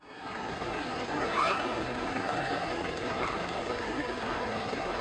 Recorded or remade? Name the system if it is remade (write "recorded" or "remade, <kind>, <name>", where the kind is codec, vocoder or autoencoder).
remade, codec, SNAC